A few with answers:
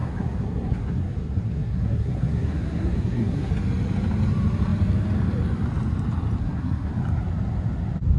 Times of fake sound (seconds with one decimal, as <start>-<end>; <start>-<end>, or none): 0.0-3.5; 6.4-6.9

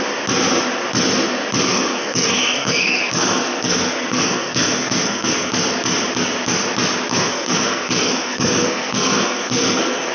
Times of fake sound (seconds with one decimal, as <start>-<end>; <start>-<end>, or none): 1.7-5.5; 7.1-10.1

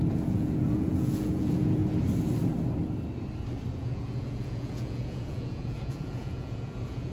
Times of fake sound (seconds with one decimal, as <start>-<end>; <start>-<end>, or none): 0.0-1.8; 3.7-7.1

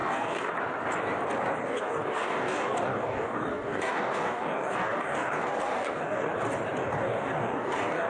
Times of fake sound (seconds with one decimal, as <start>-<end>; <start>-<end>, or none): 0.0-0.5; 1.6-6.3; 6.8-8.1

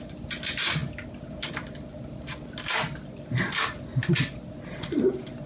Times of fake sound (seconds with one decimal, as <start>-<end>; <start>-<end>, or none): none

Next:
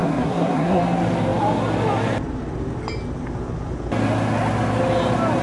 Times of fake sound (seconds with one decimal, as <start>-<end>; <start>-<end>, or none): 0.0-0.8

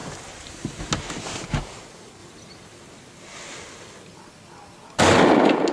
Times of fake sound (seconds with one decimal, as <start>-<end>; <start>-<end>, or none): none

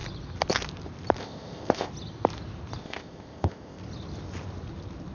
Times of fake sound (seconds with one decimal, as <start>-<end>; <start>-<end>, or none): 1.2-1.9; 2.8-3.8